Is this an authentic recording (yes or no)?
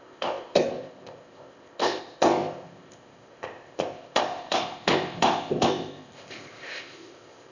no